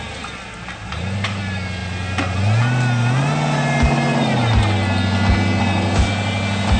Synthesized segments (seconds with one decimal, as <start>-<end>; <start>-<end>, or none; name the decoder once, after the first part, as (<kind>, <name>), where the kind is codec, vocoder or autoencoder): none